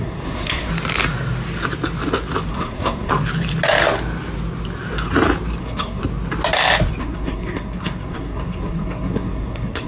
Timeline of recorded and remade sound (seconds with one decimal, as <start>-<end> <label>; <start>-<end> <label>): 0.0-0.7 remade; 0.7-2.5 recorded; 2.5-3.1 remade; 3.1-5.6 recorded; 5.6-6.0 remade; 6.0-7.0 recorded; 7.0-9.9 remade